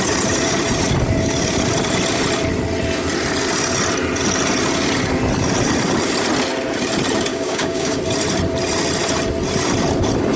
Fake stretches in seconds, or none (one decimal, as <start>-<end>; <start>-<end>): 7.3-8.0

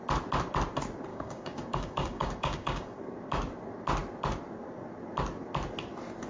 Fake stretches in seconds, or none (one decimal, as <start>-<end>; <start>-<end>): 1.1-3.0

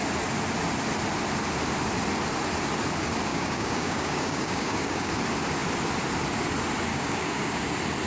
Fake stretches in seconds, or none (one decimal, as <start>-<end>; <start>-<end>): 3.3-5.1; 6.9-7.6